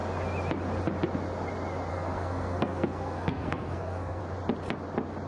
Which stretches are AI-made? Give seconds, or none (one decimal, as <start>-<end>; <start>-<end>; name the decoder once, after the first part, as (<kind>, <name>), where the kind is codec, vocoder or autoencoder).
1.9-4.2 (codec, SNAC)